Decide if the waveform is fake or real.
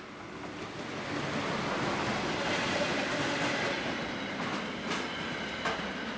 real